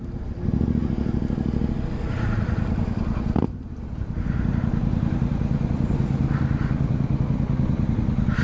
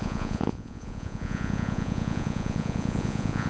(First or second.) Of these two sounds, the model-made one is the second